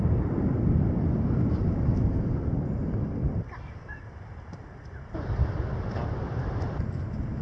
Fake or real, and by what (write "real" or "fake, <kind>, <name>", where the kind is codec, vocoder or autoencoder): real